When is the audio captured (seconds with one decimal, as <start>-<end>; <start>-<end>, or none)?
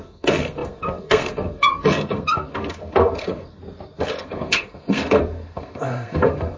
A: 3.6-4.1